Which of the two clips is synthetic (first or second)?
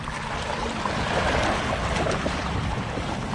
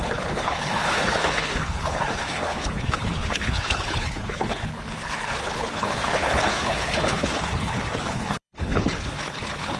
second